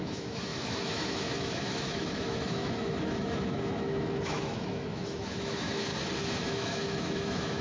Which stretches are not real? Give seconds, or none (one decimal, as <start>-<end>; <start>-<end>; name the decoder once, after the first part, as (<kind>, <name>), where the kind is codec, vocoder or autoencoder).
0.0-5.9 (autoencoder, DAC-VAE); 6.5-7.6